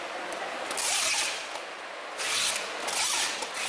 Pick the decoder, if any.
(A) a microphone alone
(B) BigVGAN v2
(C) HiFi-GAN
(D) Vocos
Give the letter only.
A